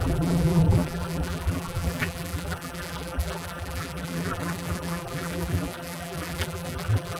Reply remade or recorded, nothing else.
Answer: remade